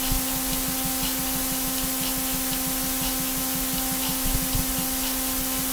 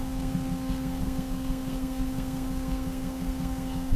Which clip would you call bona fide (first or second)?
first